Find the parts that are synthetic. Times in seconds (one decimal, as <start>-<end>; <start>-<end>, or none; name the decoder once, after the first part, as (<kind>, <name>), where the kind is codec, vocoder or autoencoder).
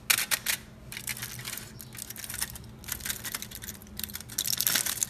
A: 3.8-4.3 (vocoder, BigVGAN v2)